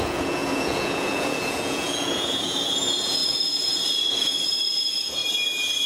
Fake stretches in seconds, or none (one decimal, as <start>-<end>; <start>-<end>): 0.0-5.2